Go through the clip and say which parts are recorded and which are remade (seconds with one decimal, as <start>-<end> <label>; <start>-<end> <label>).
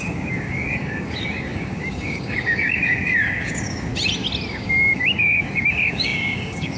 0.0-3.9 remade; 3.9-4.5 recorded; 4.5-6.8 remade